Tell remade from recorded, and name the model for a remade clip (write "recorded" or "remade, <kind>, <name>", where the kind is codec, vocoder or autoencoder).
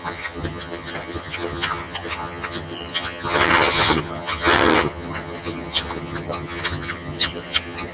remade, vocoder, HiFi-GAN